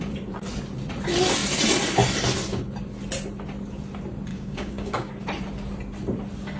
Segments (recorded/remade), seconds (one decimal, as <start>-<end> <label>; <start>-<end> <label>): 0.0-4.3 recorded; 4.3-5.1 remade; 5.1-6.6 recorded